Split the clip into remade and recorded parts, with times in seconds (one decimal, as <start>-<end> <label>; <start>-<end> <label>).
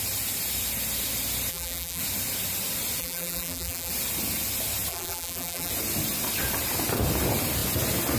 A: 0.0-1.5 recorded; 1.5-2.0 remade; 2.0-3.0 recorded; 3.0-3.9 remade; 3.9-4.9 recorded; 4.9-5.7 remade; 5.7-8.2 recorded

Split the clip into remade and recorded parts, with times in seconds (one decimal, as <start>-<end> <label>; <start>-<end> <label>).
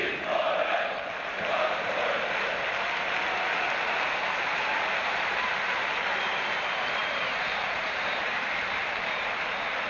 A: 0.0-0.8 recorded; 0.8-9.9 remade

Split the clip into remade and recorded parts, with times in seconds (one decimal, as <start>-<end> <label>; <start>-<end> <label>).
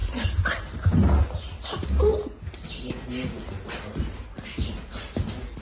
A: 0.0-5.6 recorded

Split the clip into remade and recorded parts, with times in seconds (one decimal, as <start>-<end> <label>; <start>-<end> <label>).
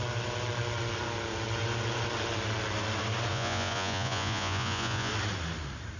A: 0.0-3.3 recorded; 3.3-5.1 remade; 5.1-6.0 recorded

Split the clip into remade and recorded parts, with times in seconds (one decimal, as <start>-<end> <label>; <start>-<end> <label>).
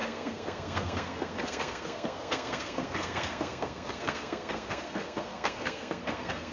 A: 0.0-6.5 remade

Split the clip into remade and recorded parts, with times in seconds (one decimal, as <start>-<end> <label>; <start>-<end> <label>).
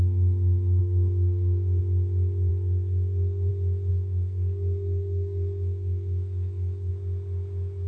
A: 0.0-0.8 recorded; 0.8-1.8 remade; 1.8-2.5 recorded; 2.5-3.5 remade; 3.5-3.9 recorded; 3.9-6.9 remade; 6.9-7.9 recorded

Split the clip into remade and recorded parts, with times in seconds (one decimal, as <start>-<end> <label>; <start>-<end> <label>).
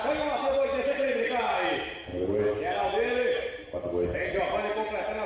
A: 0.0-5.3 recorded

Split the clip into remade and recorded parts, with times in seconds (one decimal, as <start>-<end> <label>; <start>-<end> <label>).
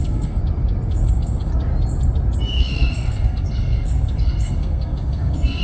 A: 0.0-0.4 remade; 0.4-0.9 recorded; 0.9-1.5 remade; 1.5-2.4 recorded; 2.4-5.6 remade